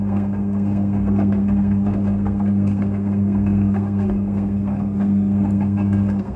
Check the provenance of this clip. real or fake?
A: fake